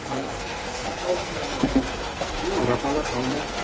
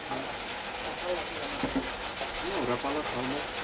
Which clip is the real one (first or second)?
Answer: second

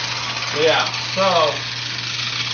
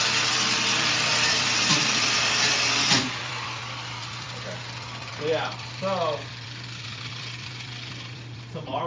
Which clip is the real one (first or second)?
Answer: first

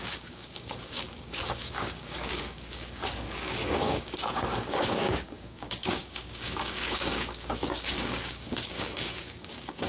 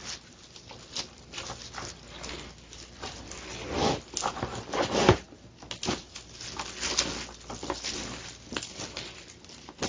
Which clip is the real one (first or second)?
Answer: second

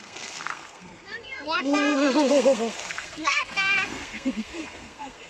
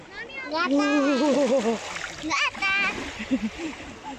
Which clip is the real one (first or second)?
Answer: second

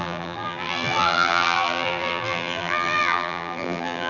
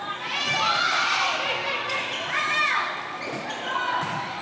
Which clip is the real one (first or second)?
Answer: second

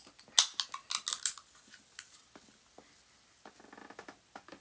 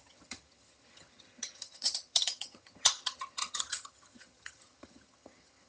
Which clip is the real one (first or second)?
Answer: first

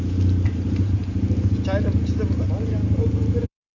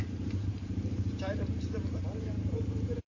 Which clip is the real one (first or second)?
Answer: first